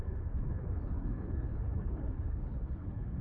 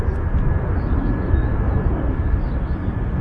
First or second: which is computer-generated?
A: first